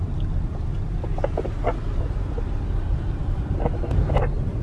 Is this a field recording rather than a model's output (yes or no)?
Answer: yes